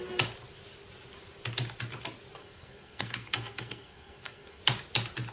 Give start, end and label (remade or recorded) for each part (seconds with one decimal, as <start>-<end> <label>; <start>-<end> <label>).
0.0-2.4 recorded; 2.4-4.6 remade; 4.6-5.3 recorded